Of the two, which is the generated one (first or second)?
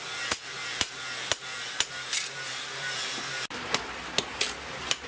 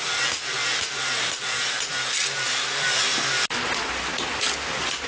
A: second